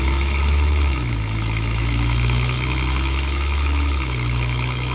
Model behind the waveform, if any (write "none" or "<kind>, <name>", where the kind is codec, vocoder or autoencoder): autoencoder, DAC-VAE